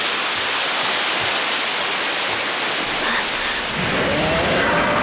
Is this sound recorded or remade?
recorded